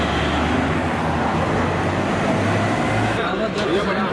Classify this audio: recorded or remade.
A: recorded